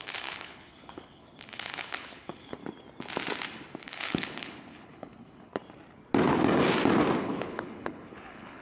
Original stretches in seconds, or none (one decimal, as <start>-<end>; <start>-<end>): 2.6-3.8; 5.5-7.2